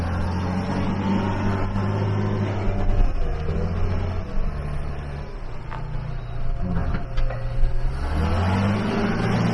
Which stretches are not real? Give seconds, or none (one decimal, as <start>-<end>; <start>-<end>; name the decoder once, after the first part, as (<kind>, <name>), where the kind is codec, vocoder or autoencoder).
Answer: none